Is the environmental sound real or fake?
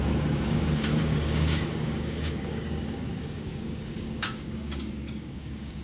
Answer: fake